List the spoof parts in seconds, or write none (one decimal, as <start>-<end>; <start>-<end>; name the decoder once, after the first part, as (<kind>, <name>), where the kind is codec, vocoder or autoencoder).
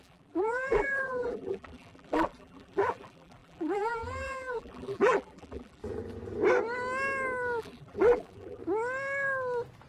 0.0-5.8 (vocoder, BigVGAN v2); 7.6-8.6